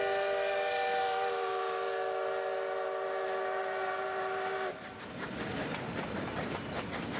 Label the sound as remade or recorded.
recorded